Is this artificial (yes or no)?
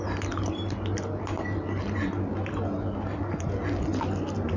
no